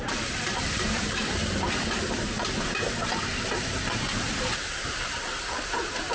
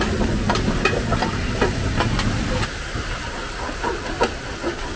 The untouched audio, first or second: second